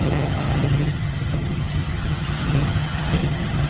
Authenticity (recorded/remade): remade